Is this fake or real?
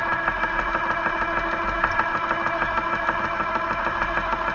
real